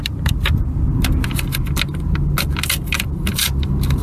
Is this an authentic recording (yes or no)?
yes